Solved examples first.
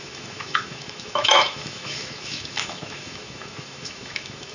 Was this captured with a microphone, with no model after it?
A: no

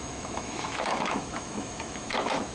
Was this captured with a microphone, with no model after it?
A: no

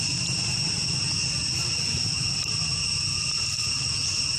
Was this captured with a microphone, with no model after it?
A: yes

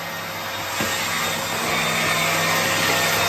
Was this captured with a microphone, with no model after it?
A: yes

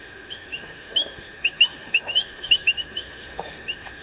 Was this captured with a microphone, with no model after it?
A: no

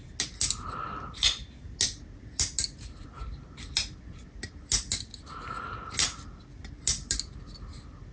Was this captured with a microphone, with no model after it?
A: yes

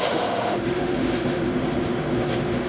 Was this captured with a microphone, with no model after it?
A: no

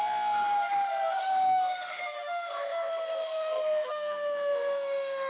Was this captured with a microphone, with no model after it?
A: no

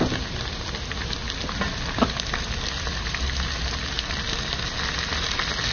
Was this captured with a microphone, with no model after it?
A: yes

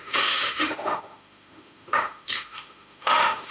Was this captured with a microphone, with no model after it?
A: no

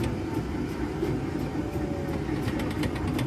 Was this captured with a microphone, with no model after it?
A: yes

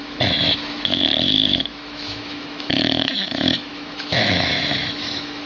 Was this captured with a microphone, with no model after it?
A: no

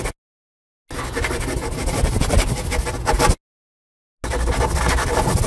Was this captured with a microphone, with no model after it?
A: yes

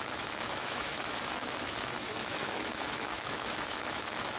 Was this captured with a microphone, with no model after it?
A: no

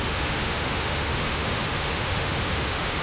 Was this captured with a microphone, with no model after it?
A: no